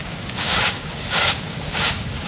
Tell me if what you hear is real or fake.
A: fake